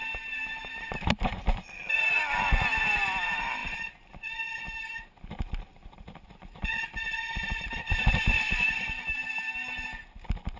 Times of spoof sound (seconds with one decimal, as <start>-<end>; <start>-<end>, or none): 5.7-9.3